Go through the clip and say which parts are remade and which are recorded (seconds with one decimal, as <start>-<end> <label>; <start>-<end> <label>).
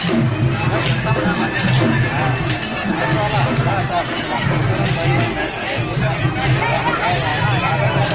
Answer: 0.0-8.1 recorded